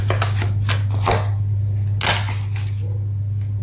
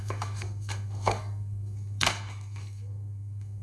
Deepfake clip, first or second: second